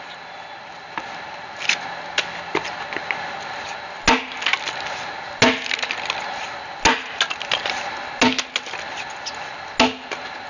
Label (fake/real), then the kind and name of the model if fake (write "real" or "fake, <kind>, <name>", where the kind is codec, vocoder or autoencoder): real